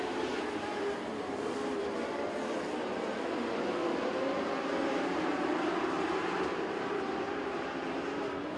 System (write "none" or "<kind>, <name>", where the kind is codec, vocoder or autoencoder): vocoder, BigVGAN v2